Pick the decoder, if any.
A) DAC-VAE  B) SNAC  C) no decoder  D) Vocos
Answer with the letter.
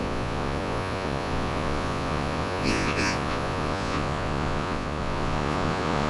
D